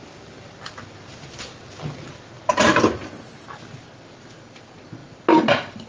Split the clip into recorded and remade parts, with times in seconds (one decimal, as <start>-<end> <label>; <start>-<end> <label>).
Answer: 0.0-2.6 remade; 2.6-5.9 recorded